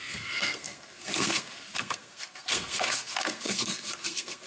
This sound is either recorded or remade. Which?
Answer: remade